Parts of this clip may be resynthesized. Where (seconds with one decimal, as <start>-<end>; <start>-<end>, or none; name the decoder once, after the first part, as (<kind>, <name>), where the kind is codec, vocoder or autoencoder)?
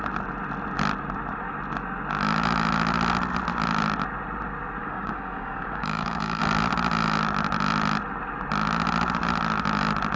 4.8-6.4 (codec, DAC)